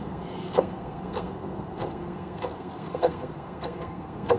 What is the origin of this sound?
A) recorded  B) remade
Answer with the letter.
B